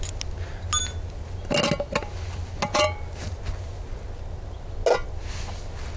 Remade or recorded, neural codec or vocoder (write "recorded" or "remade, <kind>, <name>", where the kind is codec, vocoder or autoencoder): recorded